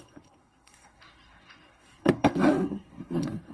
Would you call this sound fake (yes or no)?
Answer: yes